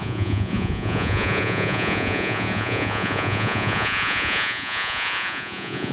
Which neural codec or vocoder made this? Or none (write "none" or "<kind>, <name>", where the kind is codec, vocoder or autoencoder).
vocoder, Vocos